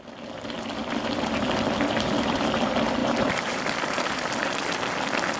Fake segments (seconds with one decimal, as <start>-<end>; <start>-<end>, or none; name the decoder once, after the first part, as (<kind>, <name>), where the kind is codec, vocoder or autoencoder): 3.0-4.1 (vocoder, BigVGAN v2)